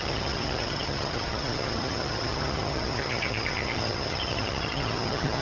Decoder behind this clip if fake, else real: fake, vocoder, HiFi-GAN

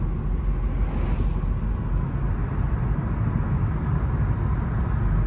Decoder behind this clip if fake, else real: real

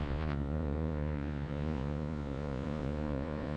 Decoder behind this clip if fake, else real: fake, vocoder, Vocos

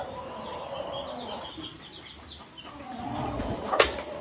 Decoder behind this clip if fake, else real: real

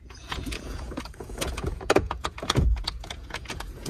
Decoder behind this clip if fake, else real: fake, vocoder, Vocos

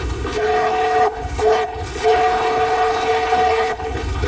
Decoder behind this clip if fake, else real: fake, codec, HILCodec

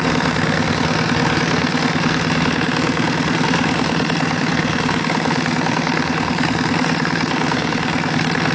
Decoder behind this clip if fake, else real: fake, codec, SNAC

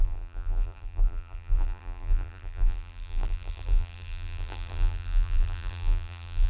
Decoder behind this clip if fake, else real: fake, vocoder, BigVGAN v2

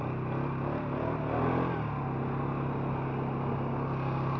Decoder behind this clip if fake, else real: real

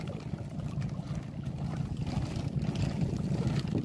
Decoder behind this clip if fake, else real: real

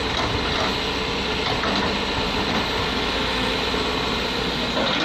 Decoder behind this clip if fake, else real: real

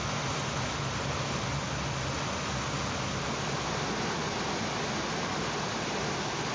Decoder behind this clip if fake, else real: real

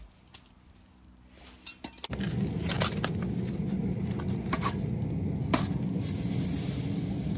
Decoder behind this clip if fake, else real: real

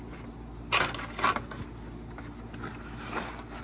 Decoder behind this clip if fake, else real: real